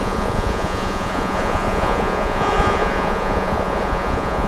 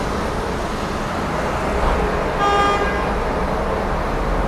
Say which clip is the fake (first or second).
first